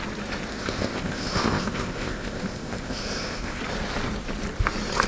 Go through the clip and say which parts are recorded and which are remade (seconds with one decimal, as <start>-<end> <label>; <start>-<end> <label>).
0.0-0.5 recorded; 0.5-3.6 remade; 3.6-5.1 recorded